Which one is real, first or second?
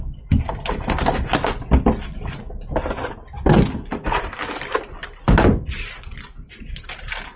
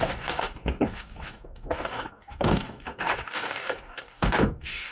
first